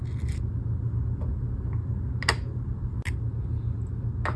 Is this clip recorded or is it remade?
recorded